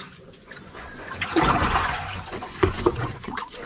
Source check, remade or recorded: remade